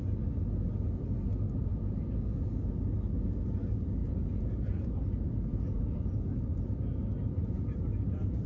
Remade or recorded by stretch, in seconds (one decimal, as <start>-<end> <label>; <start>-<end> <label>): 0.0-1.7 recorded; 1.7-2.4 remade; 2.4-4.0 recorded; 4.0-4.9 remade; 4.9-5.5 recorded; 5.5-6.0 remade; 6.0-8.5 recorded